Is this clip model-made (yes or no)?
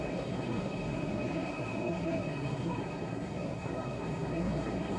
yes